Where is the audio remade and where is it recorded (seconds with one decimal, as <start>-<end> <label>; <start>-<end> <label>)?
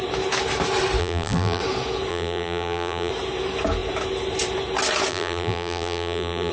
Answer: 0.0-1.0 recorded; 1.0-1.6 remade; 1.6-2.1 recorded; 2.1-3.1 remade; 3.1-5.1 recorded; 5.1-6.5 remade